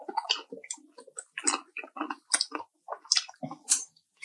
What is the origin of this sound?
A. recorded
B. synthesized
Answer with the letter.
A